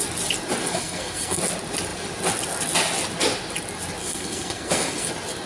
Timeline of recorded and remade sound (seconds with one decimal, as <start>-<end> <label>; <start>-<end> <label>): 0.0-0.6 recorded; 0.6-1.4 remade; 1.4-4.0 recorded; 4.0-5.1 remade; 5.1-5.5 recorded